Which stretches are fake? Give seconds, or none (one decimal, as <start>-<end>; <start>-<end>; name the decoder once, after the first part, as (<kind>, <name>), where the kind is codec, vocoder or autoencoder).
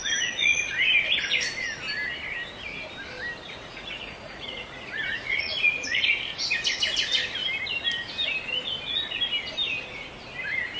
0.0-0.7 (vocoder, Vocos); 3.5-6.1